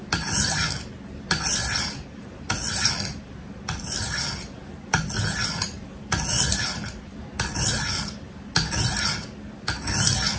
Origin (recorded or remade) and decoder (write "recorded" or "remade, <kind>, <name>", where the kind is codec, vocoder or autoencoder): recorded